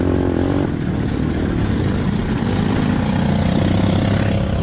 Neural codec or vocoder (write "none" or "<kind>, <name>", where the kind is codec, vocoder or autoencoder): none